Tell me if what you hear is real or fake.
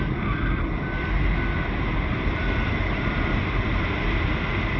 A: real